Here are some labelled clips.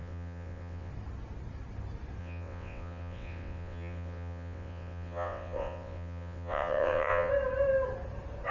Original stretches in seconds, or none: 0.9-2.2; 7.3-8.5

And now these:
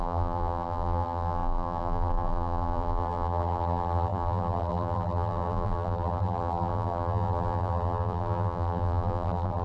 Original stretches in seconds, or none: none

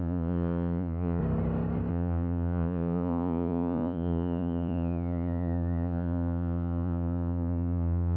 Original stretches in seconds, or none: 1.2-1.9

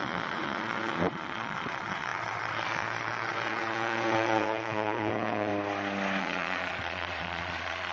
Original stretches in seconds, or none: 5.5-6.2